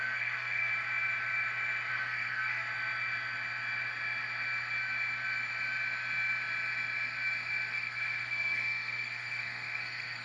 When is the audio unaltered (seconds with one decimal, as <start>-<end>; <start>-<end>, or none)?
0.7-1.9; 2.6-7.7